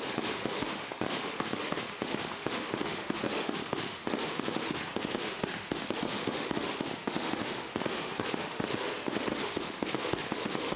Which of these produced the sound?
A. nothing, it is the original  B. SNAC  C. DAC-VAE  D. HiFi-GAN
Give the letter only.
C